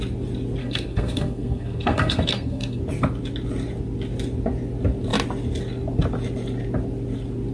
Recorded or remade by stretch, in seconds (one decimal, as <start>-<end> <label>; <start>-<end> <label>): 0.0-0.6 recorded; 0.6-2.8 remade; 2.8-7.5 recorded